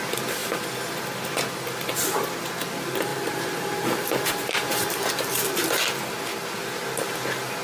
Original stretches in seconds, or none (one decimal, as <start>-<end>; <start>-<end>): 0.0-3.1; 5.8-7.6